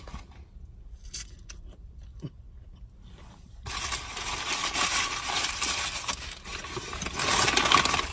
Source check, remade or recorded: recorded